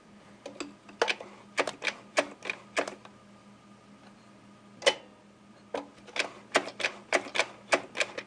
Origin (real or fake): real